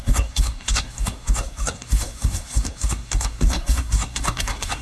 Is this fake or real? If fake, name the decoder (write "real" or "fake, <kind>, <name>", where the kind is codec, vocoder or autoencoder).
fake, codec, SNAC